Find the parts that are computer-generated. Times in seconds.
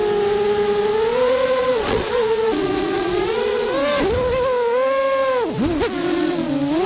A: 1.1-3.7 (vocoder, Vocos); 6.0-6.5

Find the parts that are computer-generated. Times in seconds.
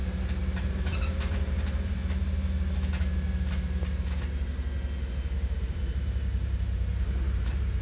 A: 0.7-2.0 (vocoder, BigVGAN v2); 5.1-7.8